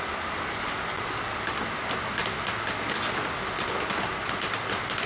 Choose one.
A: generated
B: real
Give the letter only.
B